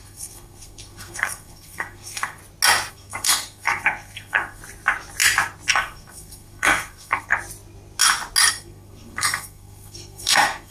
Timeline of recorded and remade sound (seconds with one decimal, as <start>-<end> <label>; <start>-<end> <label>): 0.0-2.4 remade; 2.4-2.9 recorded; 2.9-4.6 remade; 4.6-5.7 recorded; 5.7-7.3 remade; 7.3-8.5 recorded; 8.5-10.7 remade